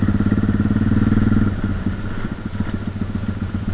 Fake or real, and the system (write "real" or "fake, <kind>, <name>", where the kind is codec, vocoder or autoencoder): real